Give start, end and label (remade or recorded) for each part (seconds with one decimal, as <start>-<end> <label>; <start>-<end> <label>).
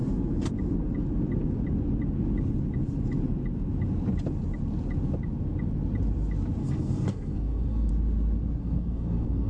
0.0-6.6 recorded; 6.6-7.9 remade; 7.9-8.6 recorded; 8.6-9.5 remade